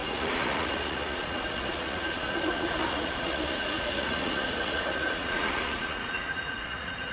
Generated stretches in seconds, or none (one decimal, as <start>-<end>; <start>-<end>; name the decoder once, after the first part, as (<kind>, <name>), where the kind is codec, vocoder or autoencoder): 0.0-7.1 (vocoder, Vocos)